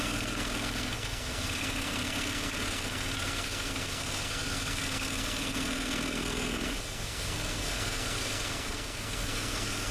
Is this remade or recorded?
remade